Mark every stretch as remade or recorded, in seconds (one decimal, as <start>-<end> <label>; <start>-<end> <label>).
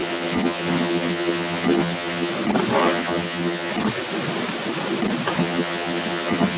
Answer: 0.0-2.3 remade; 2.3-2.8 recorded; 2.8-3.7 remade; 3.7-5.4 recorded; 5.4-6.6 remade